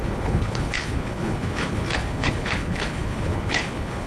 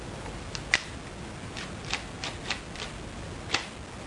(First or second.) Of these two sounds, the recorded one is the second